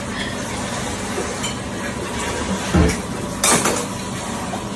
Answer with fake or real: real